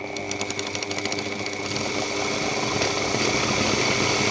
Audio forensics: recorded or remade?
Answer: recorded